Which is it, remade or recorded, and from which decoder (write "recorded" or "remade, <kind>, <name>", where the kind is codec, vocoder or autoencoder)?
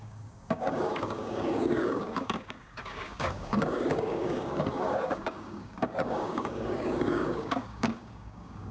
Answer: remade, codec, DAC